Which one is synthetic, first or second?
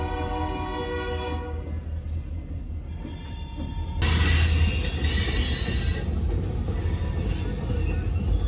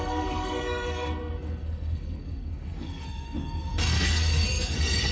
second